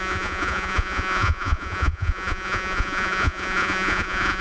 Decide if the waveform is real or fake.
fake